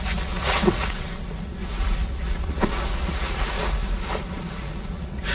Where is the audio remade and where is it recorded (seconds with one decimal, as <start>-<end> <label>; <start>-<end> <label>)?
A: 0.0-3.8 remade; 3.8-4.5 recorded; 4.5-5.3 remade